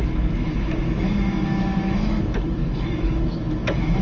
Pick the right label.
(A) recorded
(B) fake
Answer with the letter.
B